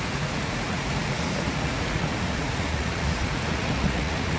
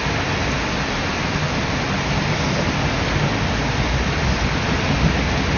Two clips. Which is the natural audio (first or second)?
second